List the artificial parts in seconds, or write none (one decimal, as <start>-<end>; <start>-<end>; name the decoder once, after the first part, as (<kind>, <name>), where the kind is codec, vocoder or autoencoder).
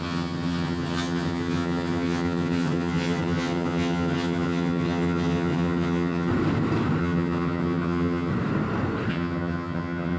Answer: 0.0-6.3 (vocoder, HiFi-GAN); 7.0-8.3; 9.1-10.2